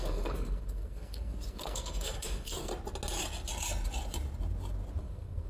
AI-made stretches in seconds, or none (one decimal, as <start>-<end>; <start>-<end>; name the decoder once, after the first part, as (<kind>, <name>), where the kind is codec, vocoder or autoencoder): 0.0-2.7 (codec, SNAC); 5.0-5.5